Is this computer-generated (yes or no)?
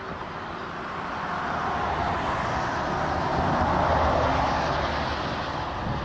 no